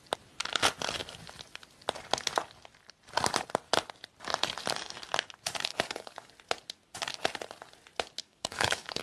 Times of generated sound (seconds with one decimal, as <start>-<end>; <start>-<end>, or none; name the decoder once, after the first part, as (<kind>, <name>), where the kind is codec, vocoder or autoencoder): 5.7-6.3 (codec, DAC); 8.2-9.0

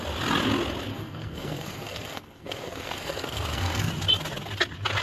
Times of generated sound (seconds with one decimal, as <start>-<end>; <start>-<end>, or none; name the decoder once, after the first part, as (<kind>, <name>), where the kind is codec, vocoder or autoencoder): 0.9-3.9 (codec, SNAC)

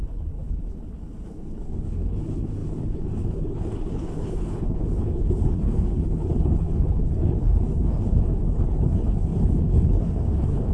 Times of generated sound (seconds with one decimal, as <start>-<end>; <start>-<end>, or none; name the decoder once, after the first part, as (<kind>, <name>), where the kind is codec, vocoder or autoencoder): 0.0-10.7 (codec, HILCodec)

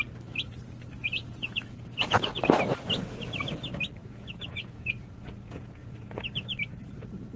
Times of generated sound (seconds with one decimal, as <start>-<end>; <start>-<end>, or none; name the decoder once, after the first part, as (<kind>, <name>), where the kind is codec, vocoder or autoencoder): 1.0-2.4 (vocoder, Vocos); 4.0-6.2

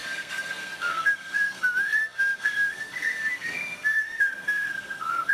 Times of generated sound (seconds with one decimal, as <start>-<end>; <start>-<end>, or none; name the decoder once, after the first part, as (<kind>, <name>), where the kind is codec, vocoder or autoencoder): 0.0-5.3 (codec, SNAC)